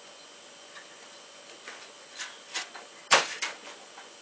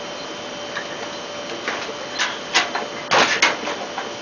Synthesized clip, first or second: first